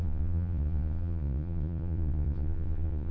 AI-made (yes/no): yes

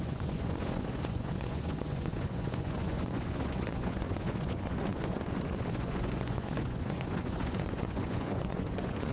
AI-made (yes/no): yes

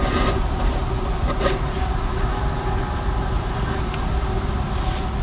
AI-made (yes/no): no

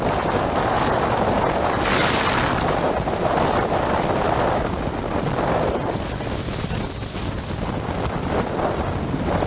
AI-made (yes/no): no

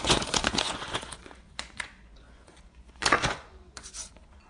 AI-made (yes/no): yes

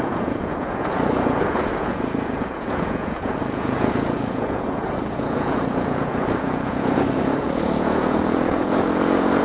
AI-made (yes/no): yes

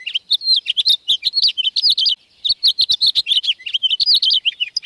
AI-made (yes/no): no